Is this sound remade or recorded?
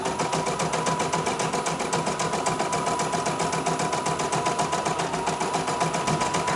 recorded